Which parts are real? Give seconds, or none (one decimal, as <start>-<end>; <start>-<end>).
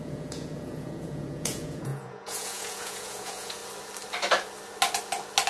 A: 3.6-5.5